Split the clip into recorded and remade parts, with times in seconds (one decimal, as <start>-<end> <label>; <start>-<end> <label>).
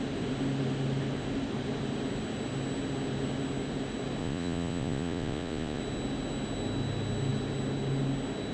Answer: 0.0-4.2 recorded; 4.2-5.8 remade; 5.8-8.5 recorded